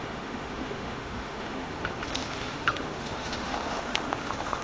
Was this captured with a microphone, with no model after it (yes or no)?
no